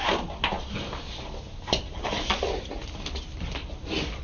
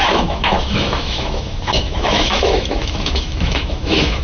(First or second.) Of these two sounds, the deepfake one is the second